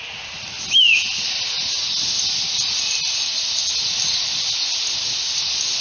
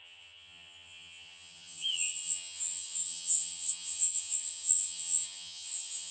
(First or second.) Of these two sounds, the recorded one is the first